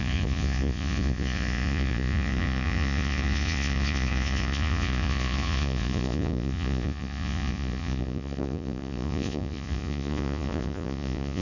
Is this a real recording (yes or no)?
no